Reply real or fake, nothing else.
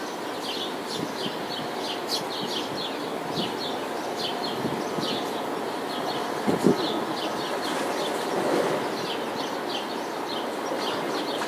real